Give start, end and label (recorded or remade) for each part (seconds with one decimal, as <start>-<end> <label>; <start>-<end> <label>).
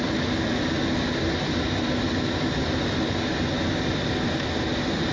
0.0-5.1 recorded